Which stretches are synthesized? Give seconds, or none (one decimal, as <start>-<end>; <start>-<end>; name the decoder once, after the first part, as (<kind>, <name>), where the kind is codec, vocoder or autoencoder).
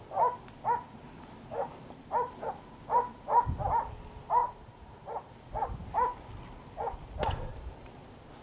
4.4-5.3 (vocoder, BigVGAN v2); 7.5-8.4